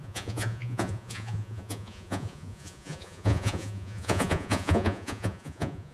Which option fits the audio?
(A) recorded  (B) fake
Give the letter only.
B